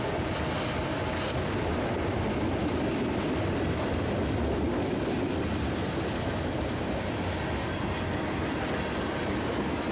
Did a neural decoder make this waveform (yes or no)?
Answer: no